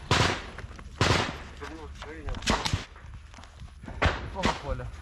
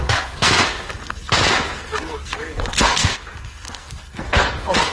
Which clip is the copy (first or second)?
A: second